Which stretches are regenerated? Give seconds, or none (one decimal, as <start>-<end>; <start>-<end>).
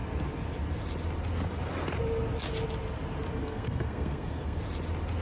3.4-4.6